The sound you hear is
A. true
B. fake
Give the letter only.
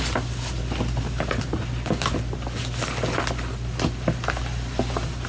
A